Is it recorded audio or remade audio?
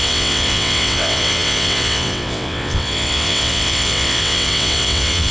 remade